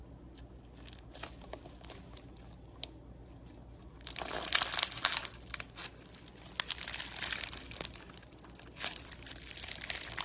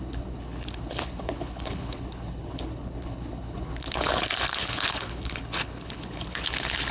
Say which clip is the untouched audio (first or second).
first